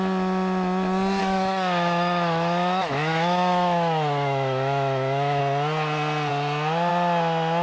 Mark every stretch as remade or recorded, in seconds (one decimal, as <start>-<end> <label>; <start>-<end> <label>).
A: 0.0-1.2 recorded; 1.2-5.4 remade; 5.4-7.6 recorded